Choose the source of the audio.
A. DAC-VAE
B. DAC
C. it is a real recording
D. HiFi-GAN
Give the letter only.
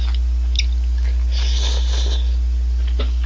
C